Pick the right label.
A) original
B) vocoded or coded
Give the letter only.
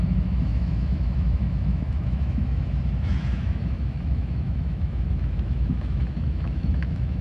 B